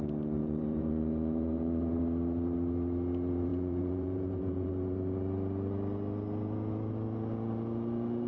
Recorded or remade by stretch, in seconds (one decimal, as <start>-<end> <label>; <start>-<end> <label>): 0.0-0.4 recorded; 0.4-2.0 remade; 2.0-3.5 recorded; 3.5-4.7 remade; 4.7-8.3 recorded

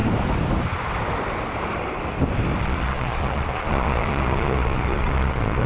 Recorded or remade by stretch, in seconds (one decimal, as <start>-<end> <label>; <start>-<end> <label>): 0.0-2.6 recorded; 2.6-5.7 remade

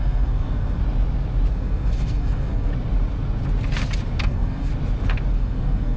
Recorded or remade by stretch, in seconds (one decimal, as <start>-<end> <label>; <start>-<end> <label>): 0.0-0.8 remade; 0.8-1.5 recorded; 1.5-2.7 remade; 2.7-4.2 recorded; 4.2-4.7 remade; 4.7-5.3 recorded; 5.3-6.0 remade

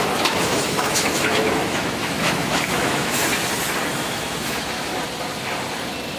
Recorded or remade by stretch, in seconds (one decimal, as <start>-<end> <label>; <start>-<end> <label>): 0.0-3.2 remade; 3.2-3.9 recorded; 3.9-4.9 remade; 4.9-6.2 recorded

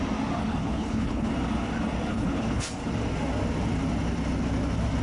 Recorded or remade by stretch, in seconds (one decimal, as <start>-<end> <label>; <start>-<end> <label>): 0.0-0.5 recorded; 0.5-1.3 remade; 1.3-2.1 recorded; 2.1-2.7 remade; 2.7-5.0 recorded

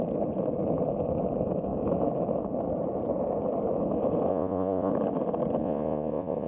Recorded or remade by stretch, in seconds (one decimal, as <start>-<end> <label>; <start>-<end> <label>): 0.0-4.3 recorded; 4.3-4.9 remade; 4.9-5.6 recorded; 5.6-6.5 remade